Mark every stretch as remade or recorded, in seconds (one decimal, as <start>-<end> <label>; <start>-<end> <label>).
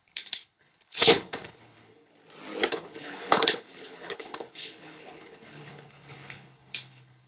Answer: 0.0-2.1 remade; 2.1-2.7 recorded; 2.7-7.3 remade